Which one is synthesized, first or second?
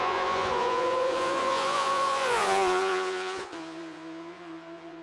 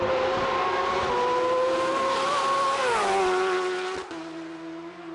first